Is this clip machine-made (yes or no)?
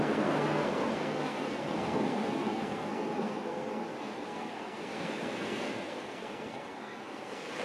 yes